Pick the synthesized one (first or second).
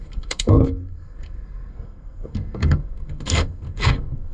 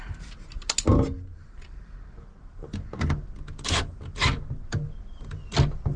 first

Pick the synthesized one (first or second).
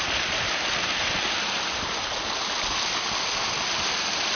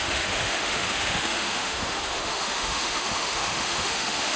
second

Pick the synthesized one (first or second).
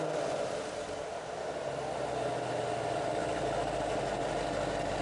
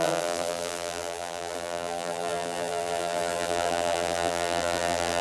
second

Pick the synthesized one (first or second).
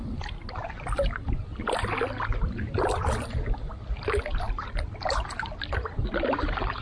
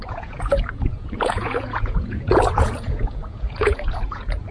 second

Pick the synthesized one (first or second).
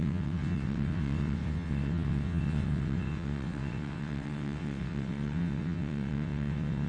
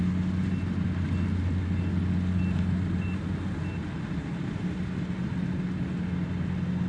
first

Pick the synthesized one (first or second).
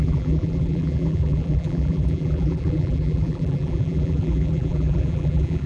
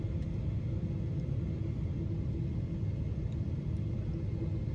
first